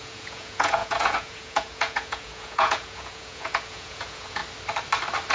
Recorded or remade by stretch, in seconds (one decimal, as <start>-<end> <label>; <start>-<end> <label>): 0.0-4.4 remade; 4.4-5.3 recorded